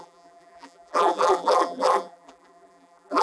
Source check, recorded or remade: remade